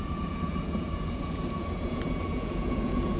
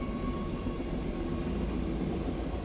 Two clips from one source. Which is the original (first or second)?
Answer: second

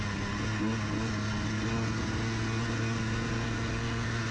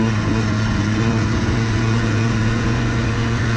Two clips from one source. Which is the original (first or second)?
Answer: first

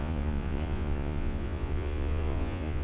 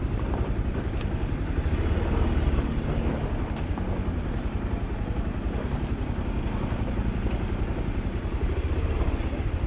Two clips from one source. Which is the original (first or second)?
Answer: second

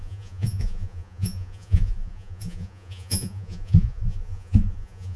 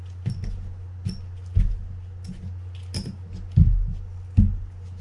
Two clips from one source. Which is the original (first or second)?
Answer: second